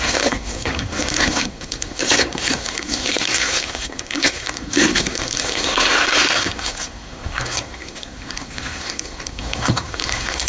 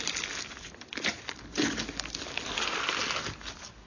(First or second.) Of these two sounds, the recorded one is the second